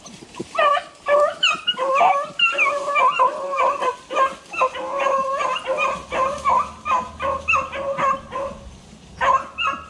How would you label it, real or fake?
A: real